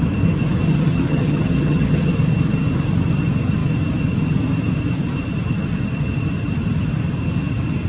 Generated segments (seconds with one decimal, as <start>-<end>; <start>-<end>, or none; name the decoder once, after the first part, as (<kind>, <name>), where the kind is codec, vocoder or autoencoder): 0.7-2.1 (vocoder, HiFi-GAN)